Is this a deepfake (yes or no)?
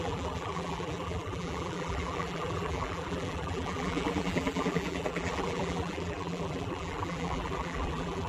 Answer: yes